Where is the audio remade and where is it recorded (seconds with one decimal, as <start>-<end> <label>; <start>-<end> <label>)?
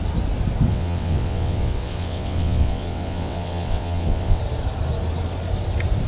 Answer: 0.0-0.7 recorded; 0.7-4.4 remade; 4.4-6.1 recorded